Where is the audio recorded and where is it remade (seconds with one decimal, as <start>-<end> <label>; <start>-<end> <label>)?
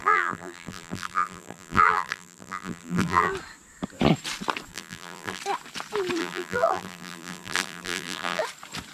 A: 0.0-3.3 remade; 3.3-4.7 recorded; 4.7-5.4 remade; 5.4-6.2 recorded; 6.2-8.4 remade; 8.4-8.9 recorded